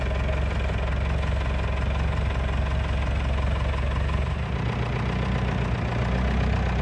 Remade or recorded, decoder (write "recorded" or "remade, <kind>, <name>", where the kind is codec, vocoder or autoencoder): recorded